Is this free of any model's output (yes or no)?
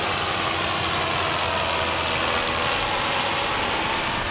yes